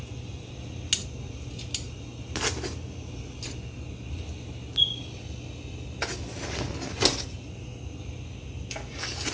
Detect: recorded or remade recorded